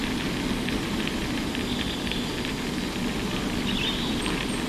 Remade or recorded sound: recorded